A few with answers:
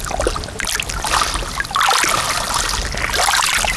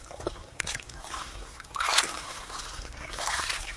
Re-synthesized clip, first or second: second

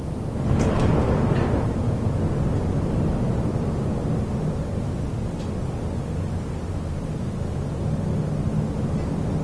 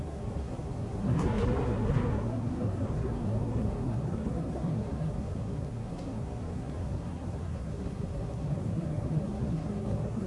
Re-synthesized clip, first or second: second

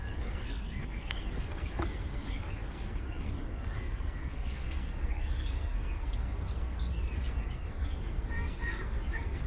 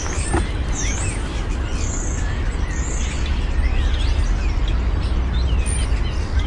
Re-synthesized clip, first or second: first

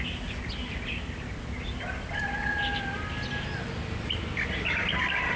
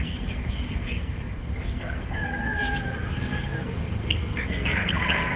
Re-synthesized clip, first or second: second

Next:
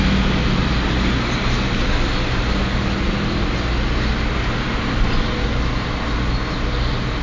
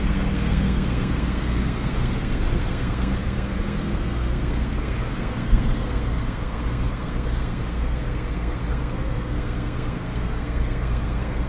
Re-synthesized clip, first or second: second